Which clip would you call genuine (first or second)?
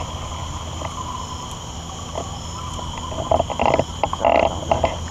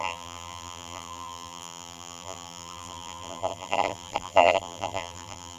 first